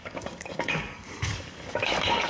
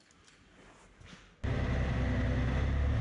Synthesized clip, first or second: first